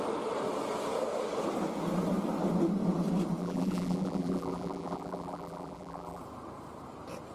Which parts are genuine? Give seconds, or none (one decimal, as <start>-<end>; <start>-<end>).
0.0-3.4; 6.2-7.3